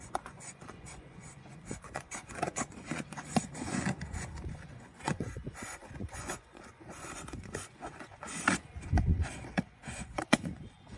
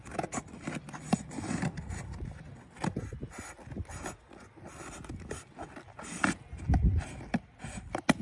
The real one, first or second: second